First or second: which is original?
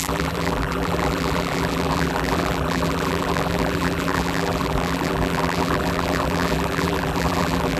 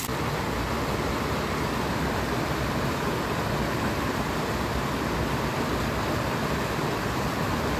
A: second